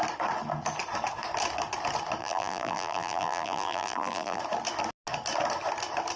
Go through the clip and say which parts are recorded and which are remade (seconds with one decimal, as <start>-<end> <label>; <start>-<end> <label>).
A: 0.0-2.2 recorded; 2.2-4.4 remade; 4.4-6.2 recorded